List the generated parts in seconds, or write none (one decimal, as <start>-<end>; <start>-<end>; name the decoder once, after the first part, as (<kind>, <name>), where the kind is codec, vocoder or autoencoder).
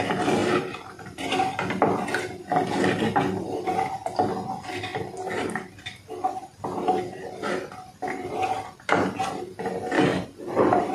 4.9-6.3 (vocoder, BigVGAN v2); 10.1-10.9